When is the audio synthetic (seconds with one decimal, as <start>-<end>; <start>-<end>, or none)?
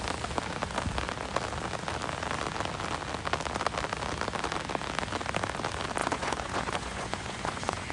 6.0-7.9